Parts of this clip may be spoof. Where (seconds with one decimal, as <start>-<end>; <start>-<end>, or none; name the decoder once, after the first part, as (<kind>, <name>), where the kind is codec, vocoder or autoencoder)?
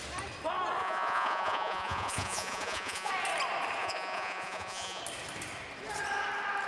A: 0.8-3.1 (vocoder, Vocos); 3.8-5.0